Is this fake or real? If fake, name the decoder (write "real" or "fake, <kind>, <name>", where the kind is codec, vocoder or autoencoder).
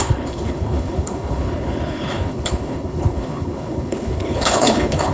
fake, codec, HILCodec